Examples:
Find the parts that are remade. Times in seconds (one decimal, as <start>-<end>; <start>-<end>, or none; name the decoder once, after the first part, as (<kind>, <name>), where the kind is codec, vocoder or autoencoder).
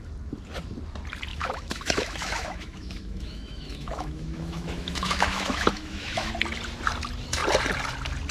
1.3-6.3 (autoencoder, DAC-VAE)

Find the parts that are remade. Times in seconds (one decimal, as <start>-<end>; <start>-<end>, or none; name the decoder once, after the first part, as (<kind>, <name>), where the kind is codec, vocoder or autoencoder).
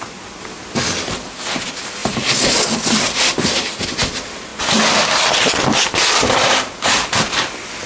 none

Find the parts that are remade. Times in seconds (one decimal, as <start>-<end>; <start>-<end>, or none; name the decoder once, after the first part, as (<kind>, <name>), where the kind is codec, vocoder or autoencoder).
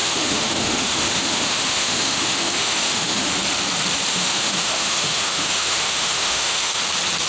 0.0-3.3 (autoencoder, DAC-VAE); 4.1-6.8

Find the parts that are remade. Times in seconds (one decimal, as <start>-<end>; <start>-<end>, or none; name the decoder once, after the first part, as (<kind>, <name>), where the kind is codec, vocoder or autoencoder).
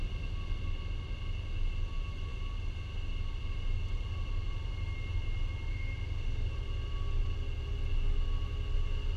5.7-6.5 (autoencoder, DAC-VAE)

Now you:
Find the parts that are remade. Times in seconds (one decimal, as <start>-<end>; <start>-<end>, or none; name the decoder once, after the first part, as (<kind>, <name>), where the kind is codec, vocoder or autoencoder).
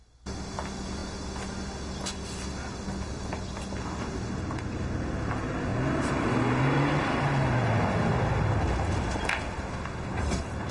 none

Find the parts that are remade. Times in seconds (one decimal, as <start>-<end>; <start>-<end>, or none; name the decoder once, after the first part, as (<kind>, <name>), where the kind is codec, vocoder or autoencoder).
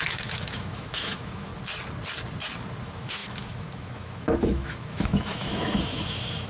0.0-1.5 (autoencoder, DAC-VAE); 2.8-6.5